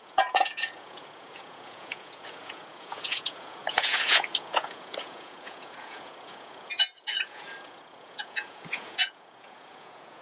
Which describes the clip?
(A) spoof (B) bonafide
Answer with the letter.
A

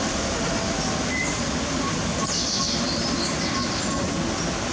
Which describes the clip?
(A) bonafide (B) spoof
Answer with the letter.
A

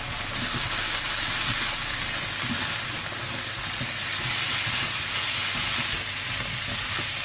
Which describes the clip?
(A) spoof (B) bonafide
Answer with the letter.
B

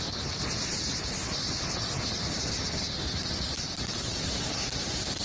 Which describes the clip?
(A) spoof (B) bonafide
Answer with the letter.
B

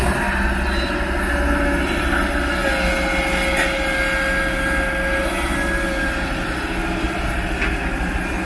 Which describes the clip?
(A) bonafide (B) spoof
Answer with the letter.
A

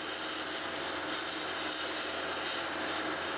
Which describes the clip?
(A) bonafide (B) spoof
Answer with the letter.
A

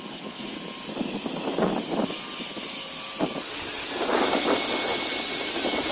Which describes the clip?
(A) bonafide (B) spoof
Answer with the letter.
A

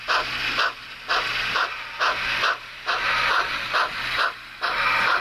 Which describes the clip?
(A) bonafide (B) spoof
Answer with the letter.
A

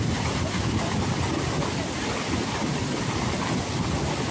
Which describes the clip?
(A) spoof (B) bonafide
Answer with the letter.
B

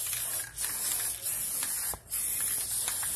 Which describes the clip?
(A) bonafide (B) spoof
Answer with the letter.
A